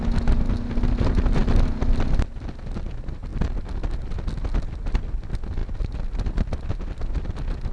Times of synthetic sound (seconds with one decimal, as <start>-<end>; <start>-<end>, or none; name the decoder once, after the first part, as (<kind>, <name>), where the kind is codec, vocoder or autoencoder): 5.6-6.7 (vocoder, BigVGAN v2)

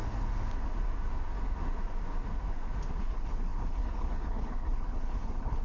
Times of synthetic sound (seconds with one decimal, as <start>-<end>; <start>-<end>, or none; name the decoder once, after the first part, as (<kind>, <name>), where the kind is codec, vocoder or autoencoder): 3.0-5.6 (codec, HILCodec)

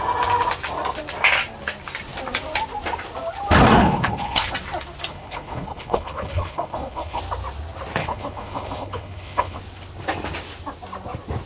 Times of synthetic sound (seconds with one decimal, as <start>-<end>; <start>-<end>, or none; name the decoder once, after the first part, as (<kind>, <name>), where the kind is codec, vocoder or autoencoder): 3.8-4.5 (codec, HILCodec); 5.1-7.2; 8.0-9.6

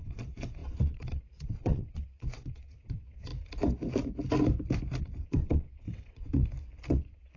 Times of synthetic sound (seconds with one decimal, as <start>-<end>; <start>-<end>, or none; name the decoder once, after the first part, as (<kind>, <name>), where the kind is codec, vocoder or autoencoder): 0.0-3.3 (vocoder, WaveNeXt); 5.0-6.4; 6.9-7.4

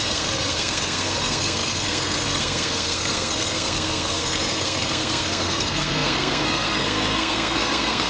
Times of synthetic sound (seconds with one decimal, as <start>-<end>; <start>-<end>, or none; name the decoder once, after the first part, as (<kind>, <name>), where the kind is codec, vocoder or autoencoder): 0.0-8.1 (codec, SNAC)

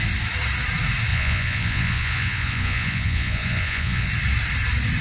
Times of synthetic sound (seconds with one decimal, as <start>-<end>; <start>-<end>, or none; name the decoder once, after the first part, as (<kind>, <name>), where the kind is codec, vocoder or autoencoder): 1.1-4.1 (vocoder, Vocos)

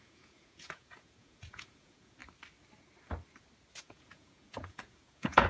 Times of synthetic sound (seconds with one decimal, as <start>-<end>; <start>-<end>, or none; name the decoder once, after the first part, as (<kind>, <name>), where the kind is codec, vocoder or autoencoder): 0.0-2.2 (vocoder, Vocos); 3.8-5.5